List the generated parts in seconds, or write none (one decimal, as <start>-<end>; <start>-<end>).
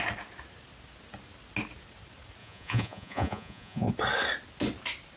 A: 2.4-3.9